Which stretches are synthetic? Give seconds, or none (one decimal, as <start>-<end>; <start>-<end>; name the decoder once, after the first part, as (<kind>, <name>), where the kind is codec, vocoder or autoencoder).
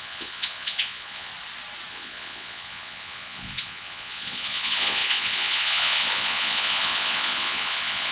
0.0-1.3 (vocoder, Vocos); 1.9-8.1